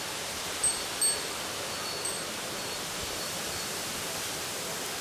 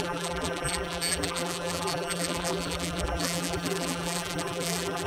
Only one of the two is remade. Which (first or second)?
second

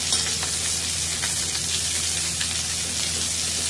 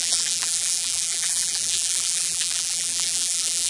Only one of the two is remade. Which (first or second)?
second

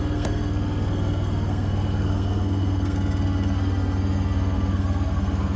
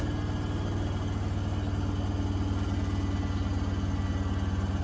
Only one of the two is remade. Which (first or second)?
first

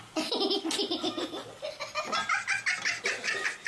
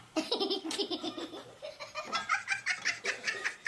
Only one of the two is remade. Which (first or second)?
second